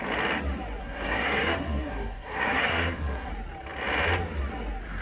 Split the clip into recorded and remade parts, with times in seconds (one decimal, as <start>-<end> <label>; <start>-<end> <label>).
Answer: 0.0-0.8 recorded; 0.8-3.3 remade; 3.3-5.0 recorded

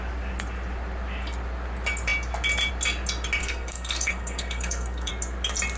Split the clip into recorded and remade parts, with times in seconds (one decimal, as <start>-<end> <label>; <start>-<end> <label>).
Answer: 0.0-3.4 recorded; 3.4-5.1 remade; 5.1-5.8 recorded

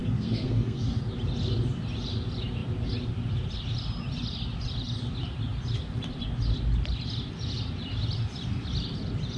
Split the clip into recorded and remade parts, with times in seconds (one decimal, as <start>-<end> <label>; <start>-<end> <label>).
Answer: 0.0-1.0 remade; 1.0-9.4 recorded

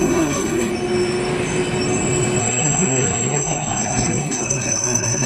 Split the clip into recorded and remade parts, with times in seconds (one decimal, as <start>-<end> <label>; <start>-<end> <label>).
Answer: 0.0-0.7 remade; 0.7-2.4 recorded; 2.4-5.3 remade